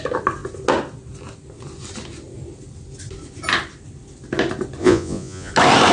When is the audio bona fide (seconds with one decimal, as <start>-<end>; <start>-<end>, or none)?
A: 0.0-4.8; 5.5-5.9